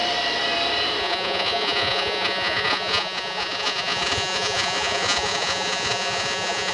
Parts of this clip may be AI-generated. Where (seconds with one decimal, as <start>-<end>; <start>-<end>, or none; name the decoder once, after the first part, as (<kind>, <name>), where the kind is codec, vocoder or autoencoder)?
1.0-6.7 (vocoder, Vocos)